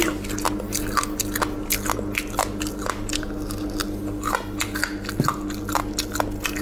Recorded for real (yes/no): yes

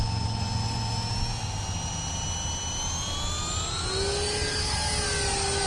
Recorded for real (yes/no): yes